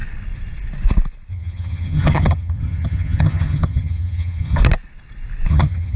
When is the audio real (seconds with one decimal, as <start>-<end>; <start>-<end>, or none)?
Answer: 0.0-1.3; 4.6-5.5